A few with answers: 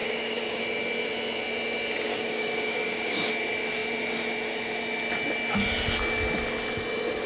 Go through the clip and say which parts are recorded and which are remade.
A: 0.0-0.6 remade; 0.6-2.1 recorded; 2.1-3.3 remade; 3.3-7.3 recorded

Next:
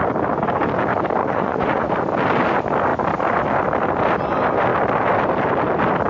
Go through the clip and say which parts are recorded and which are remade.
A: 0.0-1.2 recorded; 1.2-1.9 remade; 1.9-6.1 recorded

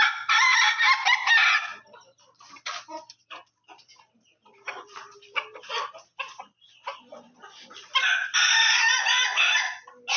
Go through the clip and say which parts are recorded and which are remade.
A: 0.0-10.2 recorded

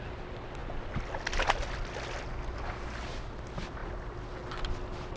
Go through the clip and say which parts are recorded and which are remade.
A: 0.0-5.2 recorded

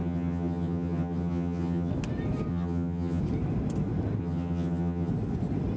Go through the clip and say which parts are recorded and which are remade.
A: 0.0-1.9 remade; 1.9-2.5 recorded; 2.5-3.2 remade; 3.2-4.2 recorded; 4.2-5.1 remade; 5.1-5.8 recorded

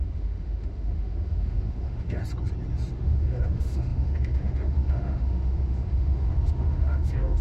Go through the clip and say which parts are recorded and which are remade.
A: 0.0-2.2 remade; 2.2-2.9 recorded; 2.9-7.4 remade

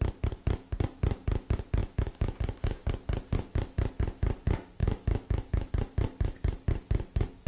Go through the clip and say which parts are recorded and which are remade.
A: 0.0-1.8 recorded; 1.8-2.4 remade; 2.4-4.8 recorded; 4.8-5.7 remade; 5.7-7.5 recorded

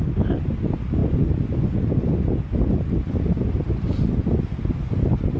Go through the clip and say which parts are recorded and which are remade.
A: 0.0-5.4 recorded